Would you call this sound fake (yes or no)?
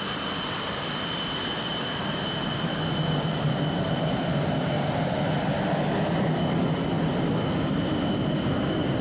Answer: no